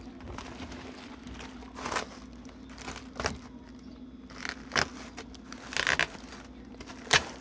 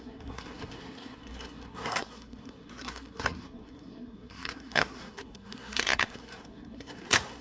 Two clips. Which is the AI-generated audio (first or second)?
second